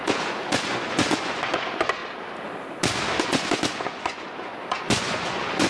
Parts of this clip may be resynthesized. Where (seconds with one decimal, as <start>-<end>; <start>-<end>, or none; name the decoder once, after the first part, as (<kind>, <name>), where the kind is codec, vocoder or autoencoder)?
0.0-2.0 (vocoder, Vocos); 3.2-5.7